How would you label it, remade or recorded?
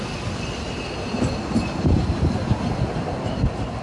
recorded